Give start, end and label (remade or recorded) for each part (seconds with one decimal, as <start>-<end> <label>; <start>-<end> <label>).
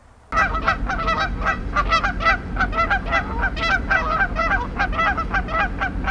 0.0-6.1 recorded